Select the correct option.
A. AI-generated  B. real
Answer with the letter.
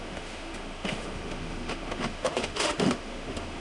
A